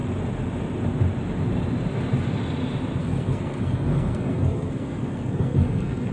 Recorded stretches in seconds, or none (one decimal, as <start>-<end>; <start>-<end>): 0.0-3.0